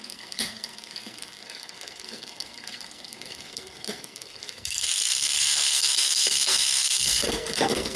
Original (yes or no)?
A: no